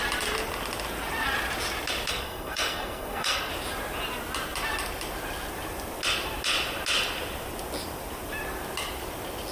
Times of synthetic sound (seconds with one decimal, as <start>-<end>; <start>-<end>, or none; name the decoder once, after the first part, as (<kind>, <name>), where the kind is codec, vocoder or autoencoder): 2.1-3.5 (codec, SNAC)